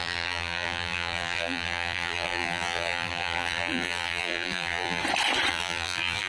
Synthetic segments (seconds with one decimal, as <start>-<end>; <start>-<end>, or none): 0.0-5.0; 5.5-6.3

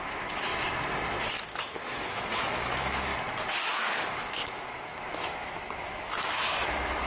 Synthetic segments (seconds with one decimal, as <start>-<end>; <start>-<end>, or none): 0.0-0.5; 1.6-3.1; 3.6-7.1

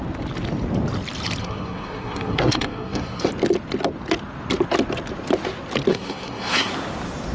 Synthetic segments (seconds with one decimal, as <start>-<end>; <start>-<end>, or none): 1.4-3.3; 5.9-6.7

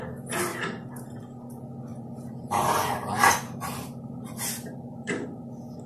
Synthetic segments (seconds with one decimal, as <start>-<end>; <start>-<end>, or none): 0.5-1.2; 1.9-5.4

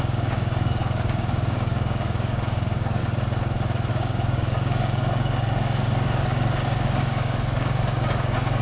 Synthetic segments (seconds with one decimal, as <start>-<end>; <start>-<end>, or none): 0.0-3.0; 3.9-8.6

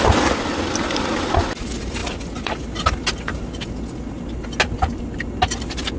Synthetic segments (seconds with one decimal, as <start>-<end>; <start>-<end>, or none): none

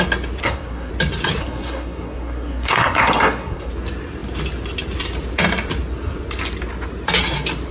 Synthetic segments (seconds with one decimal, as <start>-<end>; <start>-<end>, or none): 0.4-0.9; 1.4-3.7